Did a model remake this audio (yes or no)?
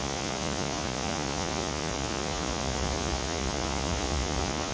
yes